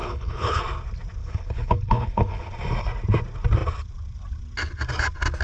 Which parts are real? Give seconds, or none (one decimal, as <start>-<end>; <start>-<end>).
0.6-1.2; 2.5-5.4